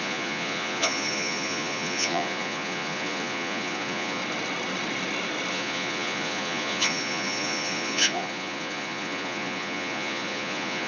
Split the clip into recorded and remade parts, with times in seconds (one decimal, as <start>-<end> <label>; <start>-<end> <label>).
0.0-4.2 remade; 4.2-5.5 recorded; 5.5-10.9 remade